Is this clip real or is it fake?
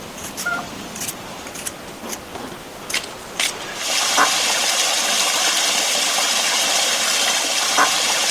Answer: fake